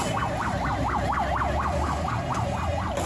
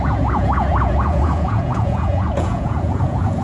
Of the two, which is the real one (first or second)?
first